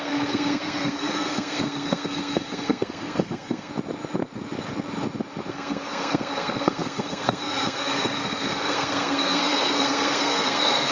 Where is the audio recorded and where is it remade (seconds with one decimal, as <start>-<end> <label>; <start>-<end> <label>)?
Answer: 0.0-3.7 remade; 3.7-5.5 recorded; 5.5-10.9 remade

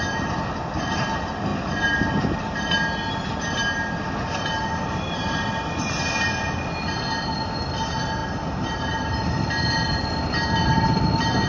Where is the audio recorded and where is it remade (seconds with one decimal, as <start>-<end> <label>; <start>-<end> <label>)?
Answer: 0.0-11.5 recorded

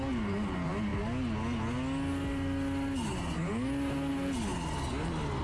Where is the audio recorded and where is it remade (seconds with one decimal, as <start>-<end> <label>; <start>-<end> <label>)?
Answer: 0.0-5.4 recorded

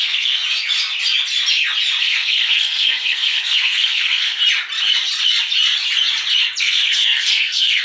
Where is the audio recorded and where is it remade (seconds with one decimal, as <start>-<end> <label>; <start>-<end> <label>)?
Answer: 0.0-0.4 remade; 0.4-2.0 recorded; 2.0-4.4 remade; 4.4-6.6 recorded; 6.6-7.8 remade

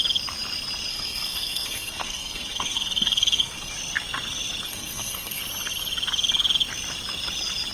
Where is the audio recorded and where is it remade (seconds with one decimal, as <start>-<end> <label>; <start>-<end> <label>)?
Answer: 0.0-0.9 recorded; 0.9-3.7 remade; 3.7-4.7 recorded; 4.7-5.4 remade; 5.4-7.7 recorded

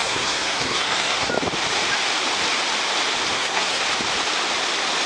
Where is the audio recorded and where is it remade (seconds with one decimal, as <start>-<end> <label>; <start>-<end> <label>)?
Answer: 0.0-1.3 remade; 1.3-3.3 recorded; 3.3-3.8 remade; 3.8-5.1 recorded

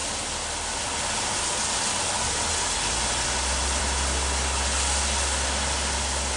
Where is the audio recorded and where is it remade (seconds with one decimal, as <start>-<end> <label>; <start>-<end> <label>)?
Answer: 0.0-6.4 recorded